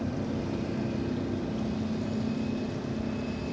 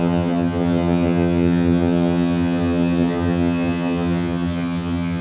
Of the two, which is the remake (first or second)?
second